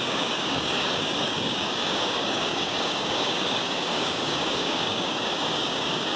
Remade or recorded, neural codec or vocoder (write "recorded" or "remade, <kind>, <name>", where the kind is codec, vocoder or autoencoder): remade, codec, DAC